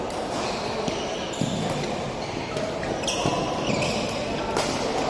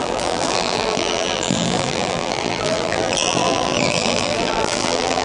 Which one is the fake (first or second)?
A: second